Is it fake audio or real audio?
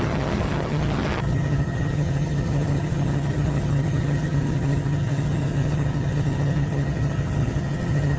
fake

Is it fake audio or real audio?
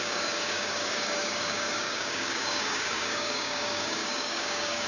fake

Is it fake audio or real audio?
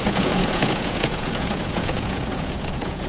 fake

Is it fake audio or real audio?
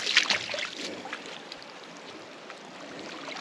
fake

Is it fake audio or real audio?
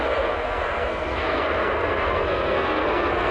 fake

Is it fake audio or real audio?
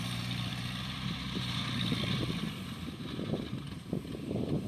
fake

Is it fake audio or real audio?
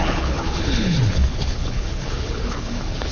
fake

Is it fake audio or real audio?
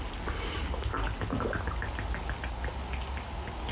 real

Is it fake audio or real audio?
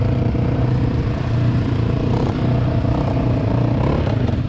fake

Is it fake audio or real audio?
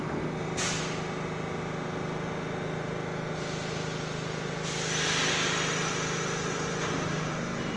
real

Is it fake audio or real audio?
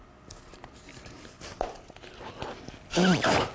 real